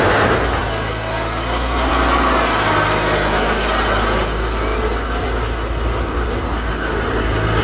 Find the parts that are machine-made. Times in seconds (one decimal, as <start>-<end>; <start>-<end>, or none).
none